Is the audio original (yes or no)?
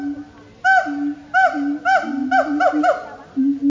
yes